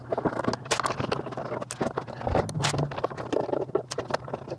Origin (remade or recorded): recorded